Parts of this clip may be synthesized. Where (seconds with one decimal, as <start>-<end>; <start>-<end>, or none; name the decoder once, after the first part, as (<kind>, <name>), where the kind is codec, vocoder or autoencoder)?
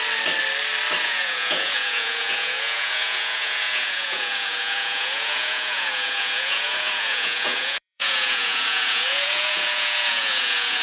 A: 1.0-10.8 (vocoder, Vocos)